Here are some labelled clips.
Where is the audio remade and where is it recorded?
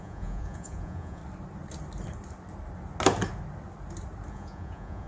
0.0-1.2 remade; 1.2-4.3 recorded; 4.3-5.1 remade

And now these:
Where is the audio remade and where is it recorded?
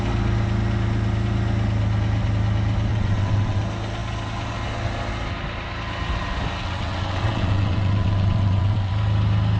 0.0-2.9 recorded; 2.9-3.6 remade; 3.6-6.6 recorded; 6.6-8.9 remade; 8.9-9.6 recorded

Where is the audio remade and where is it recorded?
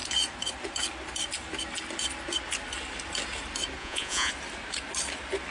0.0-3.8 recorded; 3.8-4.3 remade; 4.3-5.5 recorded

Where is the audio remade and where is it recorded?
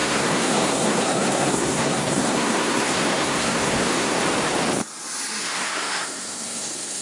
0.0-4.2 remade; 4.2-5.4 recorded; 5.4-7.0 remade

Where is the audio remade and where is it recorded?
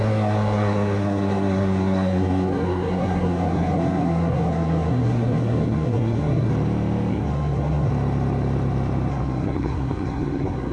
0.0-6.5 remade; 6.5-7.1 recorded; 7.1-7.9 remade; 7.9-9.1 recorded; 9.1-10.7 remade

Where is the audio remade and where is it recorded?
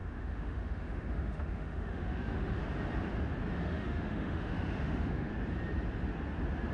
0.0-2.6 remade; 2.6-3.6 recorded; 3.6-5.3 remade; 5.3-6.7 recorded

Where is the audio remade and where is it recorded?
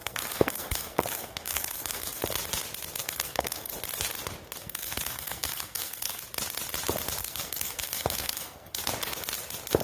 0.0-2.2 remade; 2.2-3.0 recorded; 3.0-3.7 remade; 3.7-4.6 recorded; 4.6-6.2 remade; 6.2-7.2 recorded; 7.2-8.9 remade; 8.9-9.8 recorded